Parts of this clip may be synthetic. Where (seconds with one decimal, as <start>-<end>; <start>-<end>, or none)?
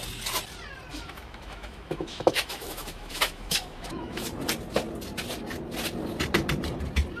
0.9-4.3